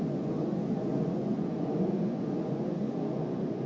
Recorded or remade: remade